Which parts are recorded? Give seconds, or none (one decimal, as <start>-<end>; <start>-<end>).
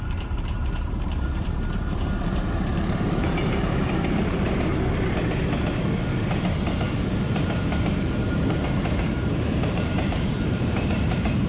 4.7-6.9